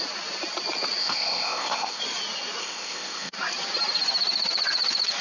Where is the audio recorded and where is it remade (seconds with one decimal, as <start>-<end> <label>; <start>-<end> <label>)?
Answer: 0.0-1.0 recorded; 1.0-2.0 remade; 2.0-2.6 recorded; 2.6-3.3 remade; 3.3-5.2 recorded